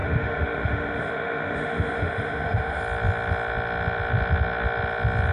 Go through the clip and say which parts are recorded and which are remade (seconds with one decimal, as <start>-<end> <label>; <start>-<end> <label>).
0.0-2.8 remade; 2.8-5.3 recorded